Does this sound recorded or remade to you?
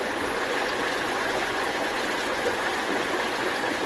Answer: remade